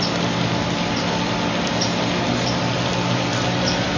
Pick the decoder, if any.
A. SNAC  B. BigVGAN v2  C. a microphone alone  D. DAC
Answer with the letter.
C